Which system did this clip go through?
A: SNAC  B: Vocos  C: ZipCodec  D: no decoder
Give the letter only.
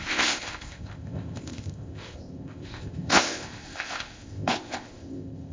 C